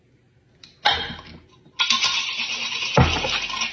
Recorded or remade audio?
recorded